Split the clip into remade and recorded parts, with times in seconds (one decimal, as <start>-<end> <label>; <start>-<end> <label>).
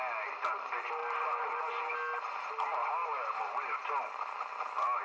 0.0-5.0 recorded